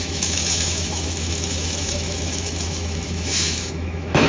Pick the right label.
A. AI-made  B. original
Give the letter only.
A